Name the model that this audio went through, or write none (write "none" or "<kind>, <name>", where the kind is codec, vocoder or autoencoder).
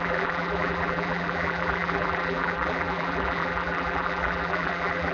vocoder, BigVGAN v2